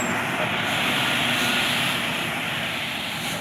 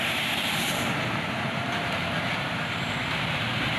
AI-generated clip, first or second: second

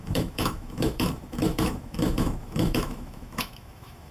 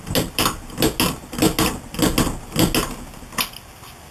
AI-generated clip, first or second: first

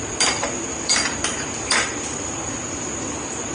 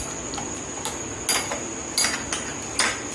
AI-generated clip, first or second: first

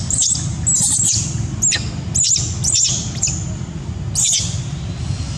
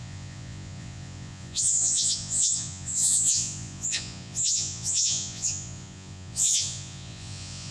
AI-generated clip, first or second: second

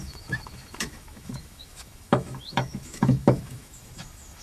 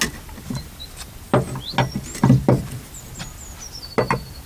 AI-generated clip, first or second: first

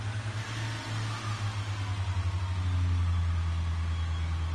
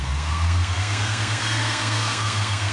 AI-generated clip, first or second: second